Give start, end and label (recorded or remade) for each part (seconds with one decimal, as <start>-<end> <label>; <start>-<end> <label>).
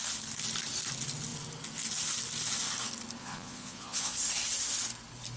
0.0-3.2 recorded; 3.2-4.2 remade; 4.2-5.4 recorded